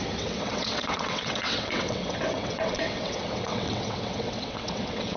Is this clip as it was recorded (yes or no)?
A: no